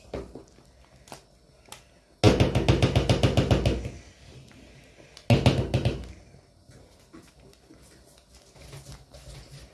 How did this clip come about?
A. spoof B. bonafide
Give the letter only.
B